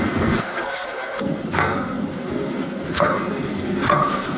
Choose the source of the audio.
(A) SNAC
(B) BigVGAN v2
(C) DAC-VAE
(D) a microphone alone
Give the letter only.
A